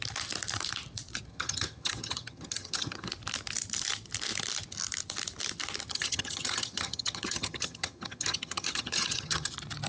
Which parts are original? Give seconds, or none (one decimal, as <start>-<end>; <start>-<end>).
0.0-1.3; 3.1-5.9; 9.5-9.9